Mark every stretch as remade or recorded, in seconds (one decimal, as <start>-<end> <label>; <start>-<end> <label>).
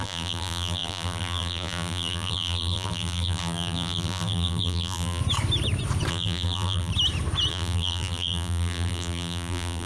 0.0-5.2 remade; 5.2-6.1 recorded; 6.1-6.9 remade; 6.9-7.5 recorded; 7.5-9.9 remade